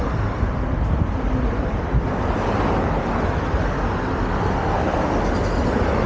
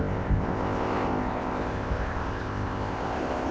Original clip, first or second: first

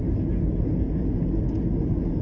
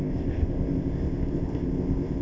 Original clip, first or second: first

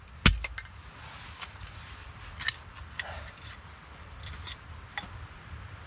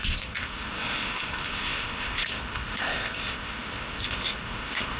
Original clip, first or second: first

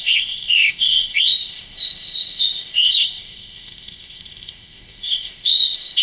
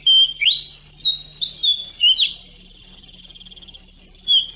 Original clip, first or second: second